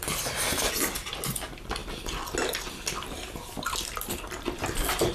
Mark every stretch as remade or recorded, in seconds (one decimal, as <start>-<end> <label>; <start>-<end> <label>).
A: 0.0-5.1 recorded